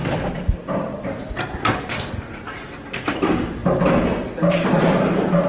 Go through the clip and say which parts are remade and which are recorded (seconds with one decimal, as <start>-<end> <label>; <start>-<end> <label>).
0.0-5.5 recorded